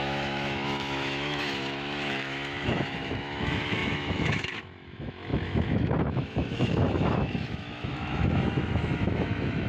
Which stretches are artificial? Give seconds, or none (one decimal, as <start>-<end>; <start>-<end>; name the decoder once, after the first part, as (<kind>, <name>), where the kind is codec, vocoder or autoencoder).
0.0-9.7 (autoencoder, DAC-VAE)